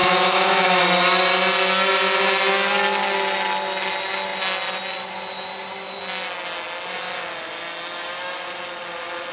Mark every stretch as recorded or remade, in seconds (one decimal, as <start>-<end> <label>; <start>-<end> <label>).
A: 0.0-0.8 remade; 0.8-9.3 recorded